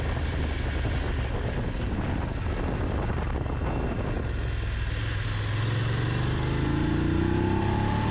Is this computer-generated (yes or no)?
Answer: no